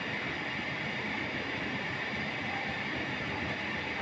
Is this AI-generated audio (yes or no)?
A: no